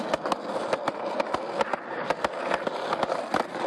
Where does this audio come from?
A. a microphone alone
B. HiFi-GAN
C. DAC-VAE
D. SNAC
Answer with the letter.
A